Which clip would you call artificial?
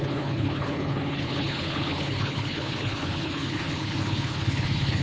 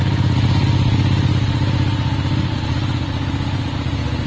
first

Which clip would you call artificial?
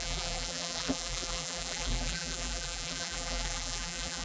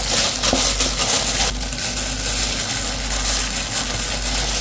first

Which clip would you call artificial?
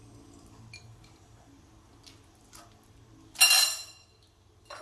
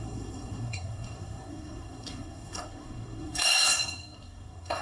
second